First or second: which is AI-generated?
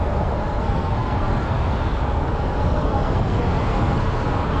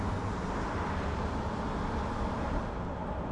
first